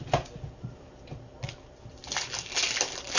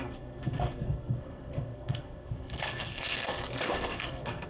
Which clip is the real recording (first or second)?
first